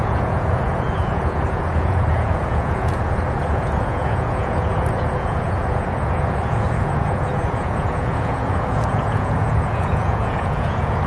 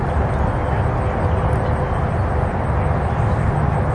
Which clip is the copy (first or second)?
first